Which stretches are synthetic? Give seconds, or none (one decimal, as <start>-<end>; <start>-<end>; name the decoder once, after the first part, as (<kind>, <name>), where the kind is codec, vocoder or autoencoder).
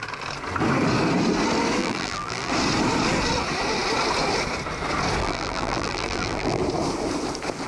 1.8-2.5 (vocoder, BigVGAN v2); 5.2-6.6